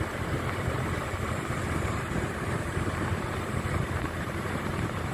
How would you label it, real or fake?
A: fake